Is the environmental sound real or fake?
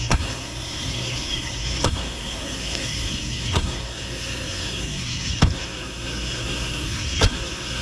fake